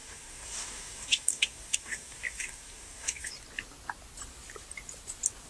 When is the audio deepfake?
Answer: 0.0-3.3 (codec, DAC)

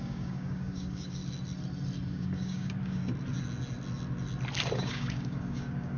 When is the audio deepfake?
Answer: 0.0-1.2 (codec, DAC); 2.1-3.0; 4.8-6.0

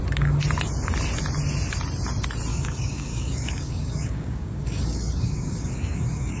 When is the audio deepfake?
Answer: 2.5-6.4 (codec, DAC)

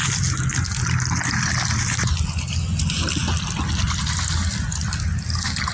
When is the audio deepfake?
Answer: none